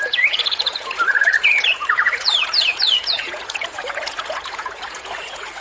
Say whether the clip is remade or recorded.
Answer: remade